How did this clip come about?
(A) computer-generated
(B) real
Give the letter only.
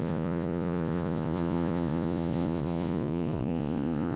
A